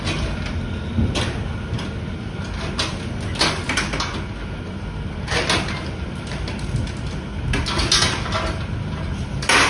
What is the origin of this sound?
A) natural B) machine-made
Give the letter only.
A